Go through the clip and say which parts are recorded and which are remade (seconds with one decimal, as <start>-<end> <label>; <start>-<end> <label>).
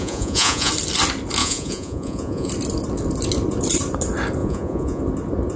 0.0-0.7 remade; 0.7-1.4 recorded; 1.4-2.5 remade; 2.5-4.4 recorded; 4.4-5.0 remade; 5.0-5.6 recorded